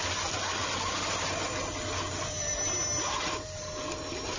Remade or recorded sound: recorded